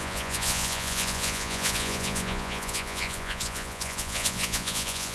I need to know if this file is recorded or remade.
remade